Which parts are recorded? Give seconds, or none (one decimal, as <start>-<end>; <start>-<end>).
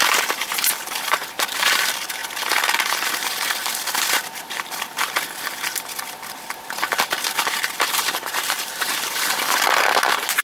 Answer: 2.2-7.0